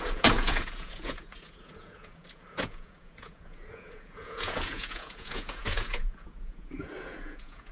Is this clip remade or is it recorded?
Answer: remade